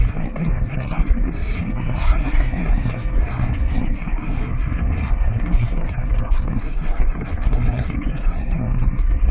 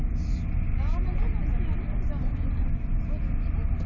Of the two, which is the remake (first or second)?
first